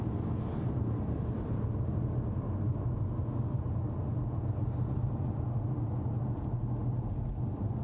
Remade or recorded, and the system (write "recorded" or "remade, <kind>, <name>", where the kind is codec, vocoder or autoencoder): recorded